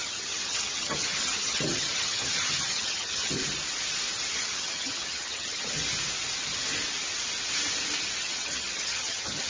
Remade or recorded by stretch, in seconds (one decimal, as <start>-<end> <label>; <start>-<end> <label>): 0.0-3.4 remade; 3.4-4.3 recorded; 4.3-5.8 remade; 5.8-8.2 recorded; 8.2-9.5 remade